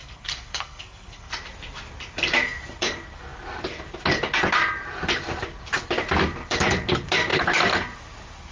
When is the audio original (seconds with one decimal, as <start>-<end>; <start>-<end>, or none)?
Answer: 1.3-8.5